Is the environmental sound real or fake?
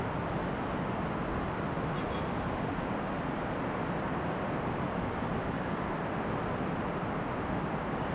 real